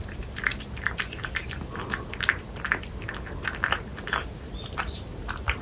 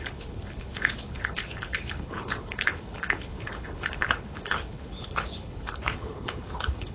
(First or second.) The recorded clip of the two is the first